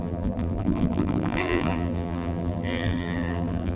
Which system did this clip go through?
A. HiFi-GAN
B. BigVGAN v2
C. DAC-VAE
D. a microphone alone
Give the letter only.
B